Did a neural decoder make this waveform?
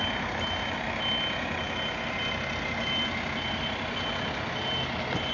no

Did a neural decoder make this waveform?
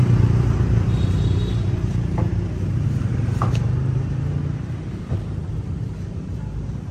yes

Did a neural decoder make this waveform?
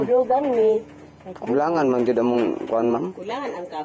yes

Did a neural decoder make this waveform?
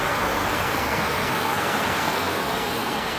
yes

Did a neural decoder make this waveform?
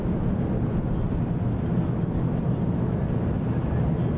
no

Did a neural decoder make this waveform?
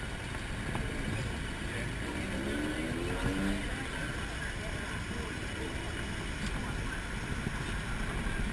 no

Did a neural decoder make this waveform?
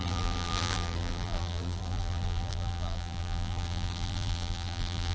yes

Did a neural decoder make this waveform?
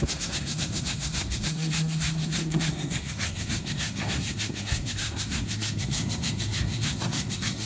yes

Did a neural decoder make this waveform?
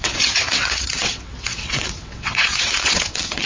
yes